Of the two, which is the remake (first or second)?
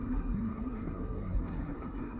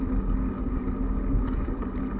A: first